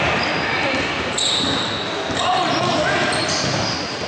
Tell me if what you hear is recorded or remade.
recorded